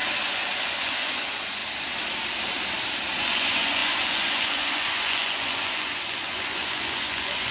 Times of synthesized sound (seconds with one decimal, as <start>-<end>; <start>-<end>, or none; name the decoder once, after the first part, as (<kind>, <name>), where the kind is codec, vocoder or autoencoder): 0.0-1.6 (vocoder, Vocos); 3.2-7.5